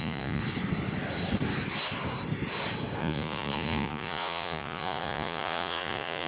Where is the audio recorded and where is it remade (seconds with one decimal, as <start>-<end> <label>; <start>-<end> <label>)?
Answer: 0.0-0.4 remade; 0.4-3.0 recorded; 3.0-6.3 remade